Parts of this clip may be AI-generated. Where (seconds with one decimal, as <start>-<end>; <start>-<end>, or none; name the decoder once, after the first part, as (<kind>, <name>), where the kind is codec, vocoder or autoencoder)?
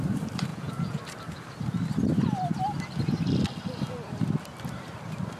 0.5-1.0 (vocoder, Vocos)